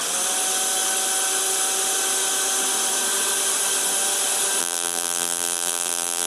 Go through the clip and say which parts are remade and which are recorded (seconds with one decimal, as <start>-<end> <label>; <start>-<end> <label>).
0.0-4.6 recorded; 4.6-6.3 remade

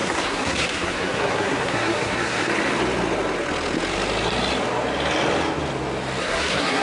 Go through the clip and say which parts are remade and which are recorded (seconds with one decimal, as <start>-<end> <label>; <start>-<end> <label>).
0.0-2.5 remade; 2.5-6.2 recorded; 6.2-6.8 remade

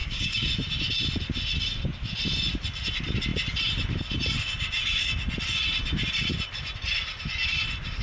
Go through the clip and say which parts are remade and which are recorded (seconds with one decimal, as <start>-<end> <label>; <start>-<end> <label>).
0.0-0.5 remade; 0.5-8.0 recorded